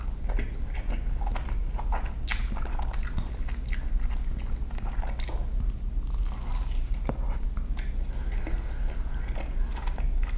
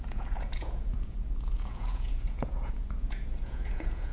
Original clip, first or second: first